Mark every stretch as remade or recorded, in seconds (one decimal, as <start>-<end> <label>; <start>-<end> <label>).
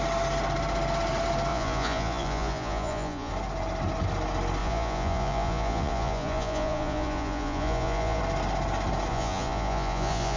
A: 0.0-1.5 recorded; 1.5-3.3 remade; 3.3-4.6 recorded; 4.6-8.2 remade; 8.2-9.1 recorded; 9.1-10.4 remade